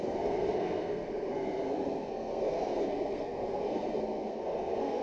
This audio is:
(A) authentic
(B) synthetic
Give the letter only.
B